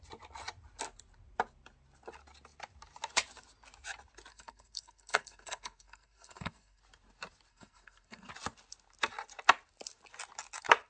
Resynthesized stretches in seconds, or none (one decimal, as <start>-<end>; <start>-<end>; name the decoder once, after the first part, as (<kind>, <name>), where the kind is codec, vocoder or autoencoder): 4.3-6.8 (codec, SNAC); 7.5-8.3